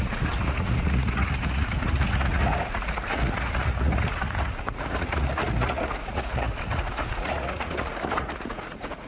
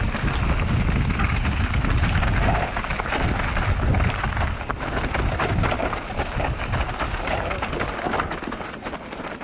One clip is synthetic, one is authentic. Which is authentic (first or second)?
second